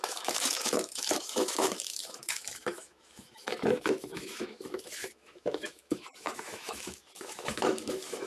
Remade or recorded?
remade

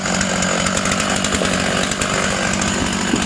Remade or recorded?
recorded